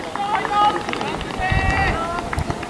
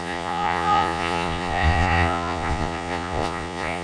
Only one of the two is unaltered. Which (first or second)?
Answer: first